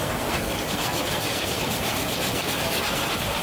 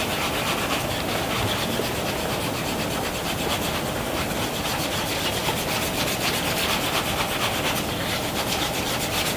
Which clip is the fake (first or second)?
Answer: first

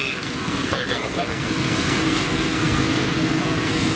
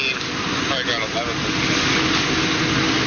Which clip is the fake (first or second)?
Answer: first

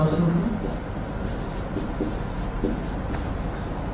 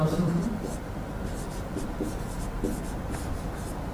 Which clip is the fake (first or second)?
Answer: second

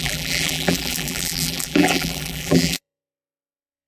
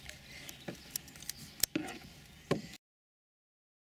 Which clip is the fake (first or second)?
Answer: first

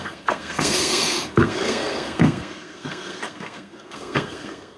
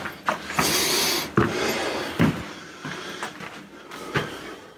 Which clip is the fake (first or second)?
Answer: first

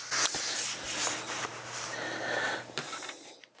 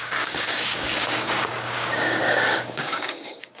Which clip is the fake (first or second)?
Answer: second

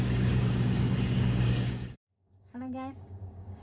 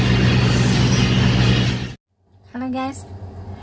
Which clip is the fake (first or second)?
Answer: first